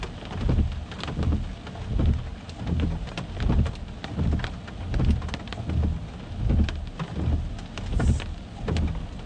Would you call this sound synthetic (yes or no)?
no